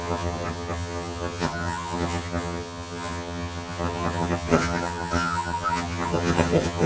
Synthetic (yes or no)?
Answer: yes